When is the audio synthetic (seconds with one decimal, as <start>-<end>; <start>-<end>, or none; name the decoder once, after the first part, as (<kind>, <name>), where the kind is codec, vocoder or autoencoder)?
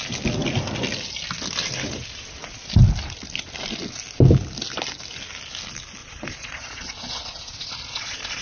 6.0-8.4 (vocoder, Vocos)